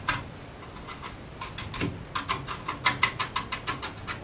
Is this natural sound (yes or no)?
yes